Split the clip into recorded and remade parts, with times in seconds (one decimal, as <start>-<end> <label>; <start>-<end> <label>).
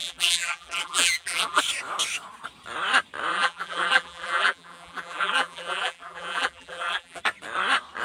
0.0-1.6 remade; 1.6-3.3 recorded; 3.3-7.2 remade; 7.2-8.0 recorded